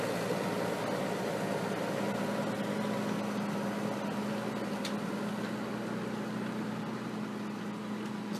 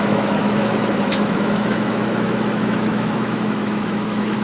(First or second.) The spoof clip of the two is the second